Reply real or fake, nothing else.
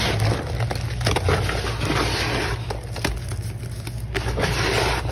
real